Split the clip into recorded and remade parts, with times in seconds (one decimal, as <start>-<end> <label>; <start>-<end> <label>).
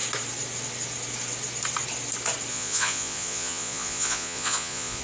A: 0.0-2.5 recorded; 2.5-5.0 remade